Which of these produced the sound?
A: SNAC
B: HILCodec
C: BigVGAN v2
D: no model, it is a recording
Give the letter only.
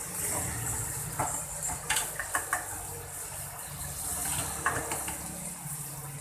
D